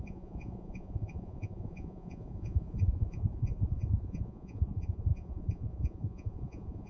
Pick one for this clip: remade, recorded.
remade